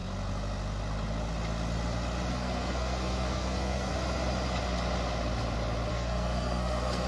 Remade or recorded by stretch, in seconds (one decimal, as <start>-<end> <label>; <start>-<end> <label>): 0.0-2.3 recorded; 2.3-3.9 remade; 3.9-5.9 recorded; 5.9-7.1 remade